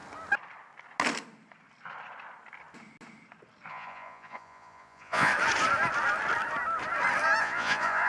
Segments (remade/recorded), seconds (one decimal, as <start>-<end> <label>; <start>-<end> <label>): 0.0-3.7 recorded; 3.7-5.3 remade; 5.3-7.4 recorded; 7.4-8.1 remade